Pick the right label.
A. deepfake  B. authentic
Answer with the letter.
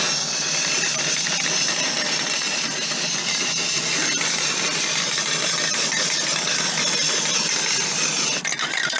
B